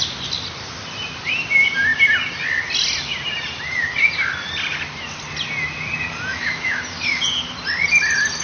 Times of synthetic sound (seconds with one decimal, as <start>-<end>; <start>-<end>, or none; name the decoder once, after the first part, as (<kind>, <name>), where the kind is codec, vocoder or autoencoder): 6.3-6.8 (autoencoder, DAC-VAE)